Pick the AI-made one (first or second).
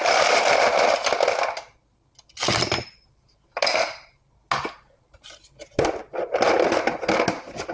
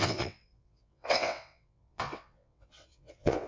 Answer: second